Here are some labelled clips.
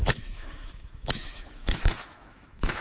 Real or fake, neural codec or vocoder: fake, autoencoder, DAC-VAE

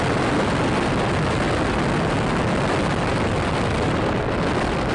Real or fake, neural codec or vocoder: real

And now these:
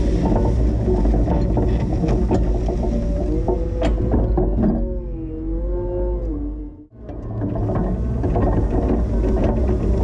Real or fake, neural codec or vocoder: real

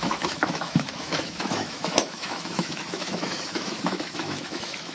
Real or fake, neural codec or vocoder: fake, autoencoder, DAC-VAE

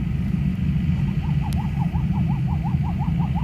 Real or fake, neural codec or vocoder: real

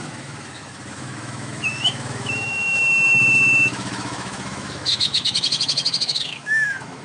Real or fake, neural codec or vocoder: fake, autoencoder, DAC-VAE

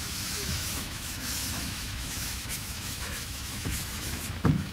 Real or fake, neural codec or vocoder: fake, autoencoder, DAC-VAE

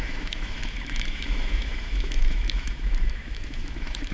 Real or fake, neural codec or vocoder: fake, autoencoder, DAC-VAE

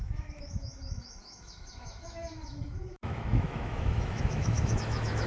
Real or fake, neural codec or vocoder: fake, autoencoder, DAC-VAE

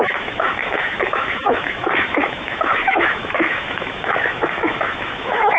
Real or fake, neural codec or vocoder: fake, autoencoder, DAC-VAE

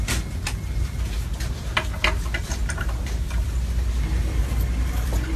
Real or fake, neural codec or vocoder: real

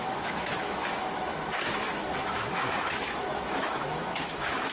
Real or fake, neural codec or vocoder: fake, autoencoder, DAC-VAE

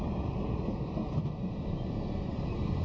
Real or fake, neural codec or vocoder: real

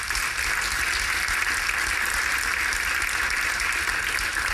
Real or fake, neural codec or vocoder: real